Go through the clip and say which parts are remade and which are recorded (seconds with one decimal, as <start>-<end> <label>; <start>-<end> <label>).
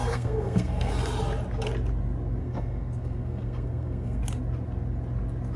0.0-0.9 remade; 0.9-2.4 recorded; 2.4-4.2 remade; 4.2-5.6 recorded